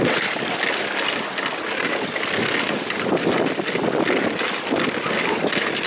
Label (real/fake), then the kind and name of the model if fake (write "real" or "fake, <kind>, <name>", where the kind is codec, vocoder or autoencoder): real